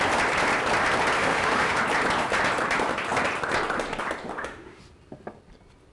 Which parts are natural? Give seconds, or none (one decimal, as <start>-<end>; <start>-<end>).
0.0-1.2; 1.8-4.3; 4.8-5.9